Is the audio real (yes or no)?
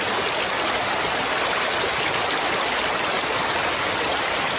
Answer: yes